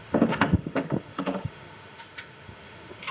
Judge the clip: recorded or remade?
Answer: remade